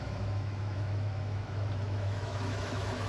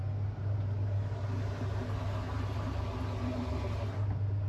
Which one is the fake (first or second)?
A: first